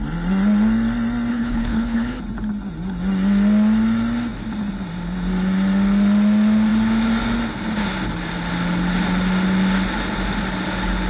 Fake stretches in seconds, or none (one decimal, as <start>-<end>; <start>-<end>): 1.3-2.2